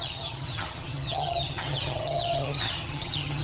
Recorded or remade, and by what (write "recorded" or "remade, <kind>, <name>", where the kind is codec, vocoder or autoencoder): remade, vocoder, HiFi-GAN